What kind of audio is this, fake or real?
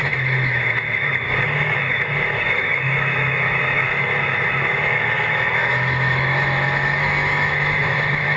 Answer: fake